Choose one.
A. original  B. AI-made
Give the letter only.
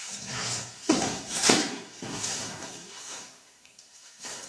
B